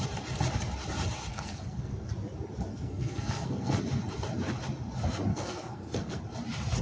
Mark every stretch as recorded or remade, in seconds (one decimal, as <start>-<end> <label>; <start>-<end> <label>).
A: 0.0-1.3 recorded; 1.3-2.1 remade; 2.1-2.7 recorded; 2.7-3.8 remade; 3.8-5.3 recorded; 5.3-6.2 remade; 6.2-6.8 recorded